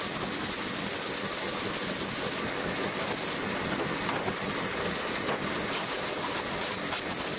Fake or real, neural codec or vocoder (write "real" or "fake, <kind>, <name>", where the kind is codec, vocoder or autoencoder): real